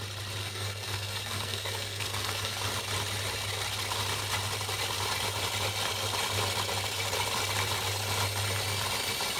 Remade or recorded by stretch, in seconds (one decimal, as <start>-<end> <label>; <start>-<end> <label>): 0.0-0.4 recorded; 0.4-2.6 remade; 2.6-9.4 recorded